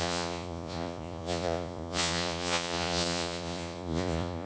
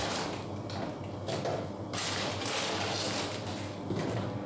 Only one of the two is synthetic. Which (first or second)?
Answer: first